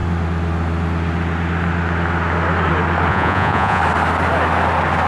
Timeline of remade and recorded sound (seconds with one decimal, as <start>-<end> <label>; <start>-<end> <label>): 0.0-3.1 recorded; 3.1-3.8 remade; 3.8-5.1 recorded